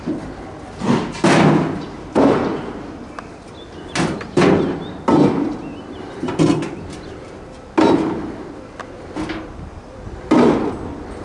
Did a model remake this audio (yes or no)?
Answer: no